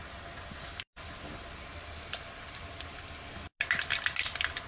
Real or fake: real